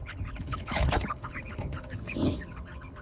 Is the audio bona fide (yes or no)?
no